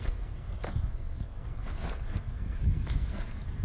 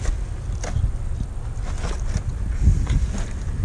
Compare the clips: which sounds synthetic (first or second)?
first